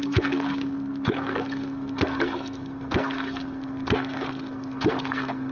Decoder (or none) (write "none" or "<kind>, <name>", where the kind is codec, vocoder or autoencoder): codec, SNAC